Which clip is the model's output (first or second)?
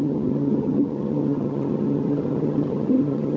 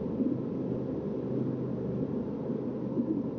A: first